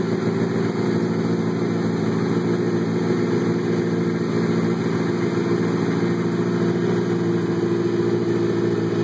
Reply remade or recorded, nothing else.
recorded